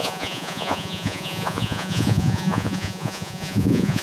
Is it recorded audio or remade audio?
remade